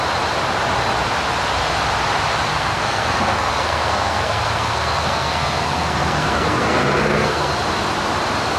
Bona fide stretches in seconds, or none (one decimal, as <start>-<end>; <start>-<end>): 0.0-2.5; 7.5-8.6